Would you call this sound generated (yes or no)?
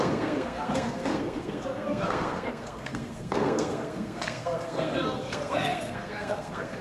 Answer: yes